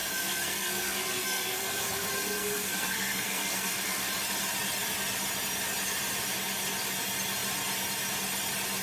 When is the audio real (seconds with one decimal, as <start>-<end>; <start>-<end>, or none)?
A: 4.1-8.8